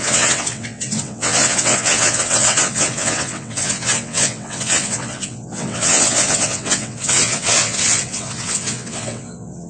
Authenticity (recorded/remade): remade